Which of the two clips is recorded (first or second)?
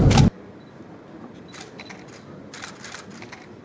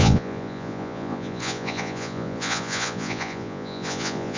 first